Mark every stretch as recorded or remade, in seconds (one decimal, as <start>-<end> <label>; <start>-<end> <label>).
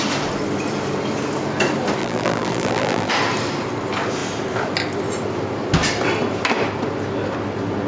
0.0-2.0 recorded; 2.0-3.1 remade; 3.1-7.9 recorded